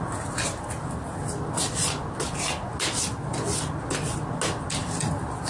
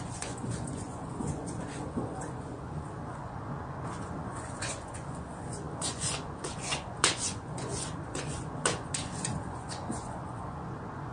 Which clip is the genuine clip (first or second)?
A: first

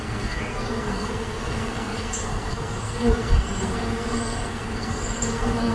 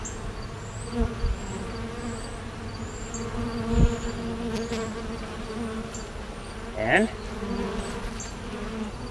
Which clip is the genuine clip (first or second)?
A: second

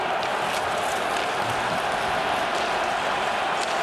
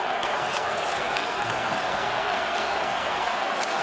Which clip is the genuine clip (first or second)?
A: first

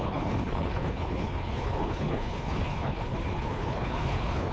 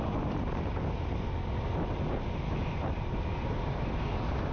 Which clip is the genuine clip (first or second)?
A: second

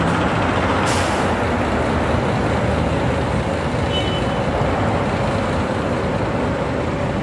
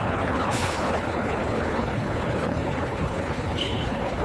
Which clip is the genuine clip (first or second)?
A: first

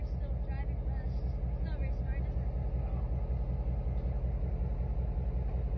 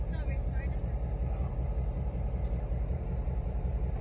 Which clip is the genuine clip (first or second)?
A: first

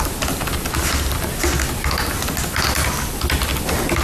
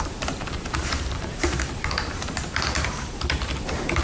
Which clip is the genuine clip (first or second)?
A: first